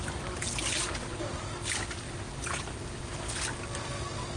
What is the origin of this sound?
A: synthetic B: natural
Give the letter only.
B